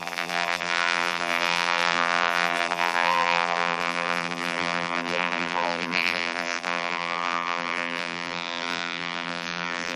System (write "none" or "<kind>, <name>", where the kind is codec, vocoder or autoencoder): vocoder, BigVGAN v2